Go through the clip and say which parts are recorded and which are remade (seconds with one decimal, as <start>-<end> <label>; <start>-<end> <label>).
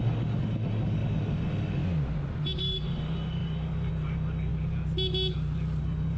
0.0-1.8 remade; 1.8-2.6 recorded; 2.6-4.5 remade; 4.5-5.8 recorded; 5.8-6.2 remade